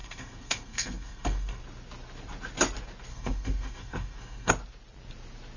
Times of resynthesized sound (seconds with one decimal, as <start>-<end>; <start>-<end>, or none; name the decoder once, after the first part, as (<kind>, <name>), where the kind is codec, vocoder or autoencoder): 0.0-1.6 (codec, SNAC); 3.1-4.5